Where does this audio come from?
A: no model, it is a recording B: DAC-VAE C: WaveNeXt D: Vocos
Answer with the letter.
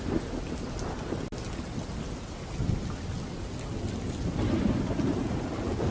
A